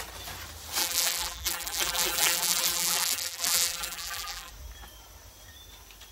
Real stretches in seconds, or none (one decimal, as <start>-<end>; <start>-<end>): 0.0-0.8; 4.5-6.1